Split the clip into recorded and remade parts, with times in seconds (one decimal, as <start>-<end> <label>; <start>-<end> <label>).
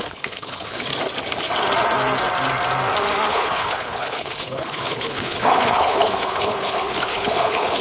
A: 0.0-0.9 remade; 0.9-3.3 recorded; 3.3-7.8 remade